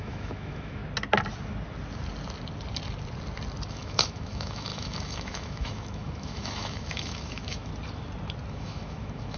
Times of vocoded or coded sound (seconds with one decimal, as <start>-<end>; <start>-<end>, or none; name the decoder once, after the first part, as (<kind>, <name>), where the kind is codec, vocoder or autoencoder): 0.0-0.8 (autoencoder, DAC-VAE); 3.7-7.7; 8.5-9.4